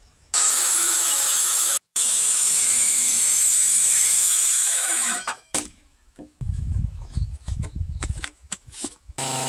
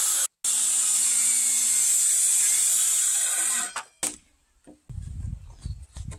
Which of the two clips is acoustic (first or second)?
second